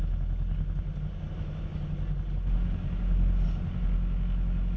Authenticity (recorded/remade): recorded